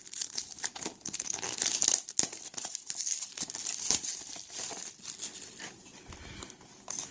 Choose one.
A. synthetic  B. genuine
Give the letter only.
A